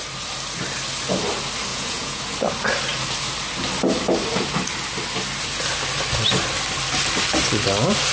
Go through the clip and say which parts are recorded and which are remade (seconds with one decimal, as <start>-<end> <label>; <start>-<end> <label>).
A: 0.0-1.7 recorded; 1.7-2.2 remade; 2.2-8.1 recorded